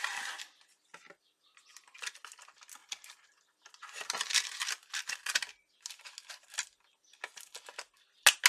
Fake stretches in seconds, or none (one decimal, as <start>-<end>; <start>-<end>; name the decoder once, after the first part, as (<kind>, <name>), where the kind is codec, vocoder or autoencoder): none